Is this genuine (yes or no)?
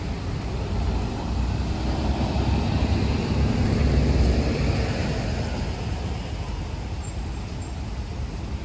yes